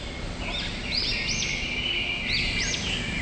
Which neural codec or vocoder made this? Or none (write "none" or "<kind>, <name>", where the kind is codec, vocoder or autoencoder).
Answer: none